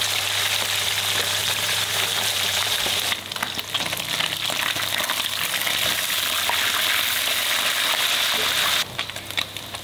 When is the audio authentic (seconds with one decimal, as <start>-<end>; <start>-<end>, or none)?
0.0-1.4; 2.8-9.8